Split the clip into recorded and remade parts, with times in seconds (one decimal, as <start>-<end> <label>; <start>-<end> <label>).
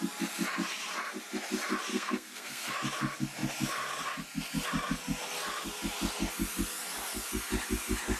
0.0-1.9 recorded; 1.9-2.7 remade; 2.7-8.2 recorded